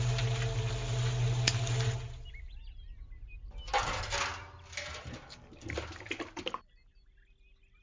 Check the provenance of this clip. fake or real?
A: real